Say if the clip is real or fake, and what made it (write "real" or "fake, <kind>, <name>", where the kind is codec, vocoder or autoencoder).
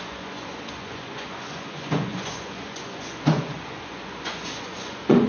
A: fake, vocoder, Vocos